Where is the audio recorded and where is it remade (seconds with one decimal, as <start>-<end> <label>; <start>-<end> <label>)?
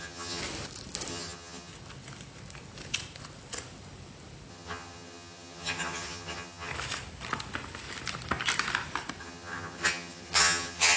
0.0-0.4 remade; 0.4-1.1 recorded; 1.1-1.7 remade; 1.7-4.5 recorded; 4.5-6.7 remade; 6.7-9.2 recorded; 9.2-11.0 remade